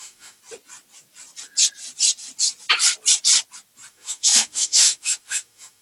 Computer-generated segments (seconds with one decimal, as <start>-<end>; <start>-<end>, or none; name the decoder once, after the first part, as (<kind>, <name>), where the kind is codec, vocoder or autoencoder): 0.0-0.4 (autoencoder, DAC-VAE); 3.9-5.8